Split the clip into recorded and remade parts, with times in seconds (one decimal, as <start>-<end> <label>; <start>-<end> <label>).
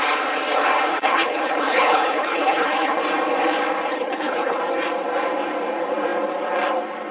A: 0.0-0.9 recorded; 0.9-3.0 remade; 3.0-3.9 recorded; 3.9-4.6 remade; 4.6-7.1 recorded